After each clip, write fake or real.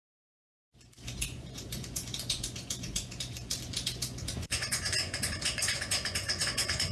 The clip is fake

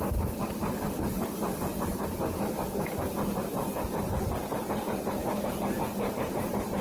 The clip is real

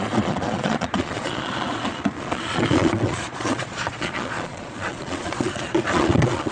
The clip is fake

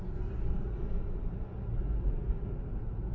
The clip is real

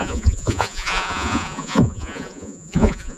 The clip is fake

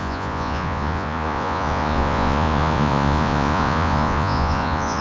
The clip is fake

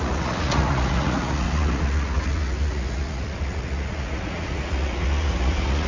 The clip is fake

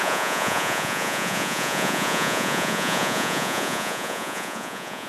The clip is fake